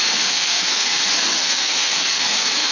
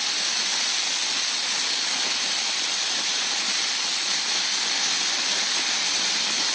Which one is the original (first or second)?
second